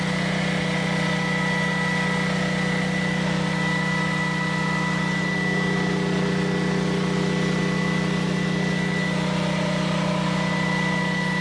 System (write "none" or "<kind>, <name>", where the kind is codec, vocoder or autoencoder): none